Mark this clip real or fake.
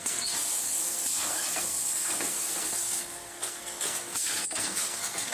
fake